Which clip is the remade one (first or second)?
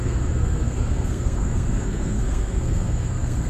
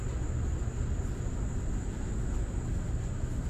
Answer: first